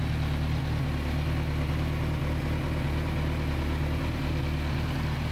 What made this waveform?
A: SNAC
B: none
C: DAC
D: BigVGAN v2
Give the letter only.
B